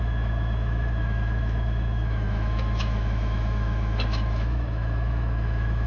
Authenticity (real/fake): fake